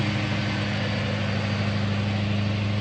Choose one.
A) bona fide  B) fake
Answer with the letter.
A